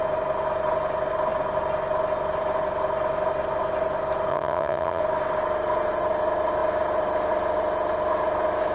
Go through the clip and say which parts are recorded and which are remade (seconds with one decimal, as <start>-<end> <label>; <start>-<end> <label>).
0.0-4.3 recorded; 4.3-5.0 remade; 5.0-8.7 recorded